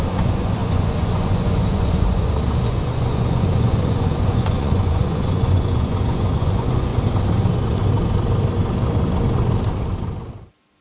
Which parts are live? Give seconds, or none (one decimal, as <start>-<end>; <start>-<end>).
6.9-10.8